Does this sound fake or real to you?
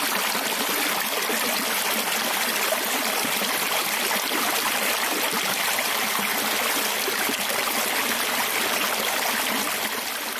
real